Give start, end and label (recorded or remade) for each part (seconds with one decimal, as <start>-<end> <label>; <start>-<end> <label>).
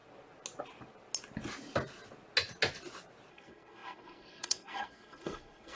0.0-3.3 recorded; 3.3-5.8 remade